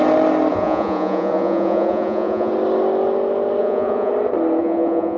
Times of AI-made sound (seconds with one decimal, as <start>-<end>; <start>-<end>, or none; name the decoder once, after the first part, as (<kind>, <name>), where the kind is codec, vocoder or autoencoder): 0.5-2.5 (vocoder, Vocos); 3.6-4.1; 4.6-5.2

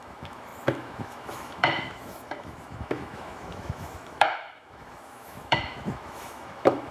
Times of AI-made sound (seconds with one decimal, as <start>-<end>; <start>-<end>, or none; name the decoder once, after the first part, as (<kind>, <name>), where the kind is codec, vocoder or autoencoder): 0.0-6.9 (autoencoder, DAC-VAE)